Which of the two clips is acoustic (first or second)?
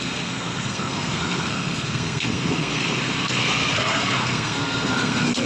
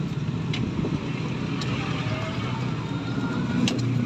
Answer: second